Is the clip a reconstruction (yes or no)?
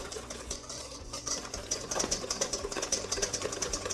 yes